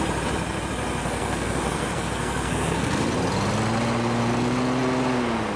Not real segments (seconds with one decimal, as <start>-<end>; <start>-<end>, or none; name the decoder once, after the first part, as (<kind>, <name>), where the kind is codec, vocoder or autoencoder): 1.0-3.0 (codec, SNAC)